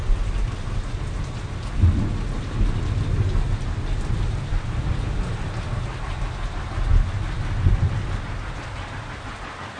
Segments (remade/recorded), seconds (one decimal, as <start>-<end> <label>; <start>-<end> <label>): 0.0-9.8 recorded